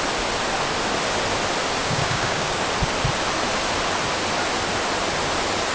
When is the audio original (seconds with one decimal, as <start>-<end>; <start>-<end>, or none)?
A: 0.0-1.8; 2.6-5.7